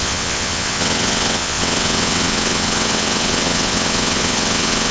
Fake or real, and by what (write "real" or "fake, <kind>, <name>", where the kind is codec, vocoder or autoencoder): fake, vocoder, WaveNeXt